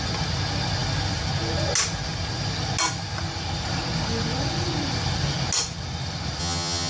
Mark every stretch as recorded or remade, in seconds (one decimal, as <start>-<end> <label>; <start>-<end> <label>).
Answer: 0.0-6.4 recorded; 6.4-6.9 remade